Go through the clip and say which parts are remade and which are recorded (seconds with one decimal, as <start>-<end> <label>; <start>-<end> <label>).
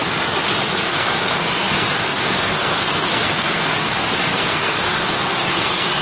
0.0-0.6 recorded; 0.6-6.0 remade